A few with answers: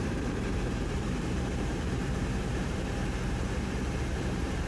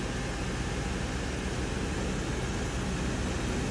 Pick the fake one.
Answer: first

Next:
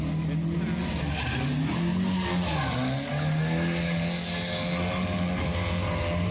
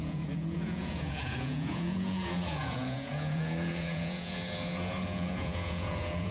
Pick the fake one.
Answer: second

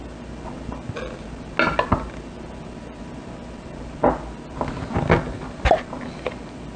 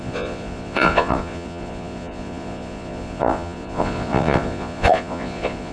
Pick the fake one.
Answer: second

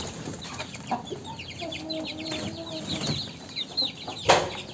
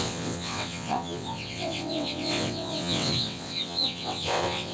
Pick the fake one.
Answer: second